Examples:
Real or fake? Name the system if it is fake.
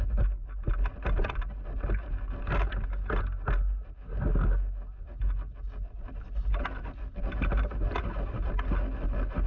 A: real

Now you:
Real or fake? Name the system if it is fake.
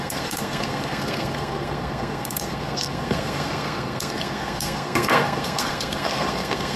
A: fake, codec, SNAC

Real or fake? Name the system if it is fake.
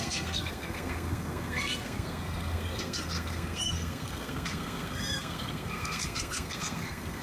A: fake, codec, SNAC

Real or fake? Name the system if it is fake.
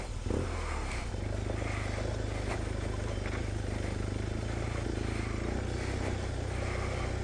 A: real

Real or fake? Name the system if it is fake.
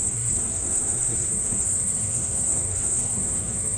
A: fake, codec, SNAC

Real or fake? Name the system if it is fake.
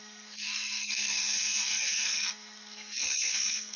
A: fake, codec, SNAC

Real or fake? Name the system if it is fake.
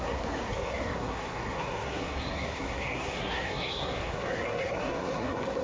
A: fake, codec, SNAC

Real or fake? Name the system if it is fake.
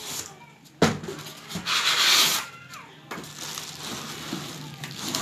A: real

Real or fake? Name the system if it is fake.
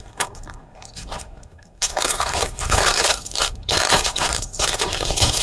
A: fake, codec, SNAC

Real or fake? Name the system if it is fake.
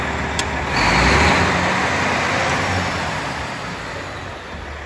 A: real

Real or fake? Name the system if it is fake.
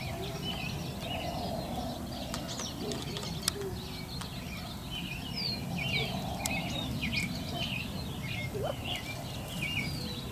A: real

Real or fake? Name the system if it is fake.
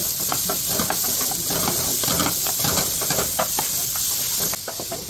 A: real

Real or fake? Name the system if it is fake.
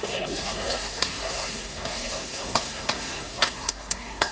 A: fake, codec, SNAC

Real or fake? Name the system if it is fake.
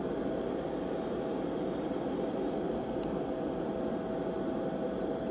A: real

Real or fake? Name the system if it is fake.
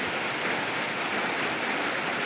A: real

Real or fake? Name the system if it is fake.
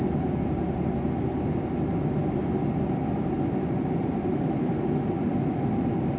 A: real